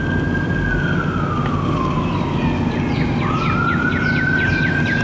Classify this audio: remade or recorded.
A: recorded